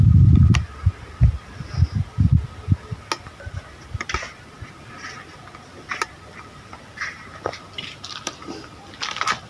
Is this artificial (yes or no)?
no